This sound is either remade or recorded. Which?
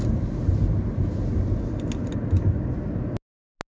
recorded